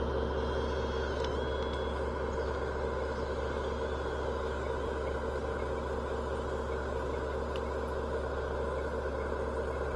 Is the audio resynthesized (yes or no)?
no